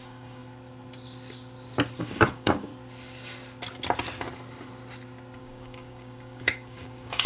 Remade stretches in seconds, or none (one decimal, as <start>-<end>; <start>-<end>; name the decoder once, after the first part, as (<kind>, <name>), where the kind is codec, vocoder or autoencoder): 0.0-0.4 (codec, DAC); 2.0-2.7; 5.4-7.3